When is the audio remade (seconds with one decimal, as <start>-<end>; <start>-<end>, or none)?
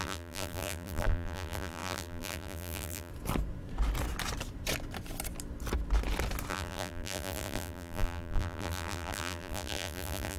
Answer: 0.0-3.1; 6.5-10.4